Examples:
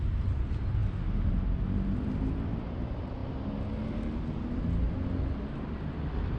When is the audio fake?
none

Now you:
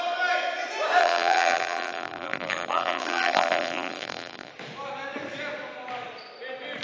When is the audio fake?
1.0-4.5 (vocoder, BigVGAN v2)

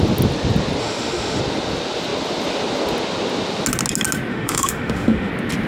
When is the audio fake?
0.8-1.4 (autoencoder, DAC-VAE); 4.3-5.3